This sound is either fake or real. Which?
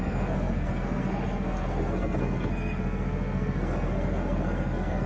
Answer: fake